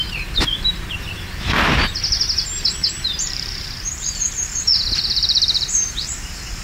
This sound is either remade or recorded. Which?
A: remade